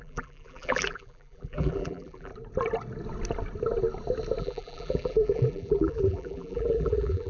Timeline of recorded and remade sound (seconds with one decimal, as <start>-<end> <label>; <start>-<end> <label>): 0.0-2.3 remade; 2.3-4.4 recorded; 4.4-7.3 remade